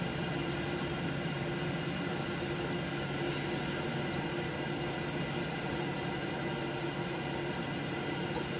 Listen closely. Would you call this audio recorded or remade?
recorded